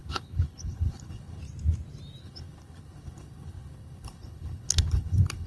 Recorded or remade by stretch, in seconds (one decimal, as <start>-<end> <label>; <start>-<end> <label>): 0.0-1.4 remade; 1.4-2.2 recorded; 2.2-5.5 remade